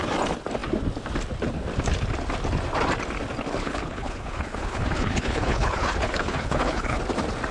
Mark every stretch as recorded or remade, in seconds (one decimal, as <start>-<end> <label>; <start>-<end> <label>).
0.0-3.6 recorded; 3.6-7.0 remade; 7.0-7.5 recorded